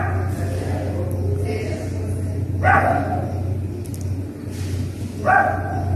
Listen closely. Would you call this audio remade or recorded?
recorded